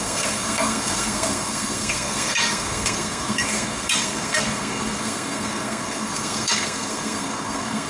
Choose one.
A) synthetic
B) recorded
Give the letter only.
A